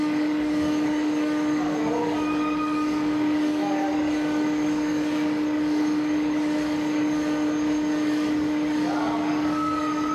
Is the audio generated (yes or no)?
yes